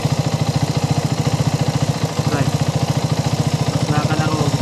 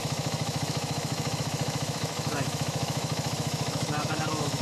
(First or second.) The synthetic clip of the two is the second